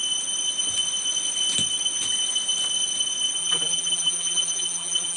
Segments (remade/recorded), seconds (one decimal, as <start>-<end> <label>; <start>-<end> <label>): 0.0-3.4 recorded; 3.4-5.2 remade